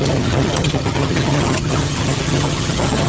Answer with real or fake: fake